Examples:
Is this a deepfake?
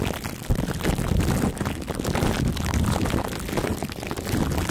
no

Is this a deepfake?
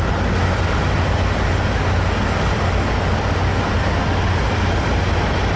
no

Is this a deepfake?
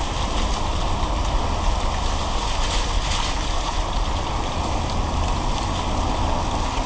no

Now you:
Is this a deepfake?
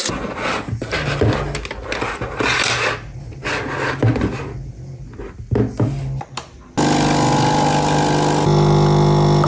no